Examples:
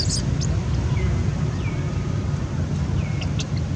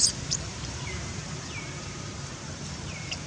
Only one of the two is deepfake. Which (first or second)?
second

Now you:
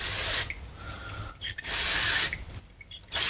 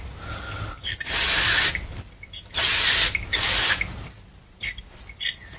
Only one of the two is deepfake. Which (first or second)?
first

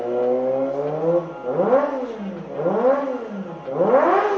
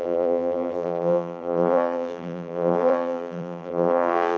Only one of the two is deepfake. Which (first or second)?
second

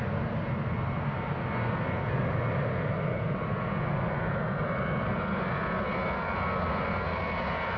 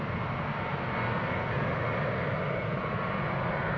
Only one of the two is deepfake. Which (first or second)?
second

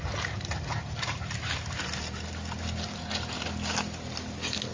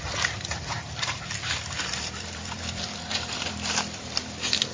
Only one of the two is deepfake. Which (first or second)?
second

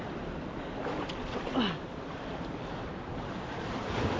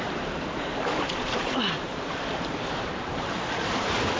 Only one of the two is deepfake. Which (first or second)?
second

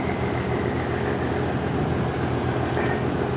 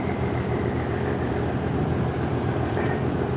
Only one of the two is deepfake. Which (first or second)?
second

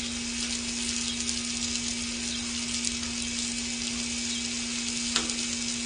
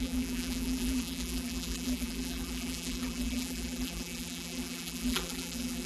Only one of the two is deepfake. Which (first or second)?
second